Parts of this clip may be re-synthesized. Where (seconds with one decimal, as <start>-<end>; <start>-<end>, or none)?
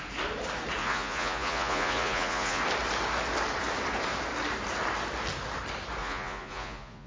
0.8-2.6; 6.0-7.1